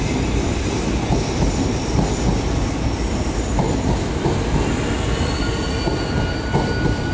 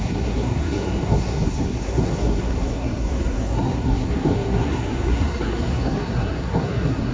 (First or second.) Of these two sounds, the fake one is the second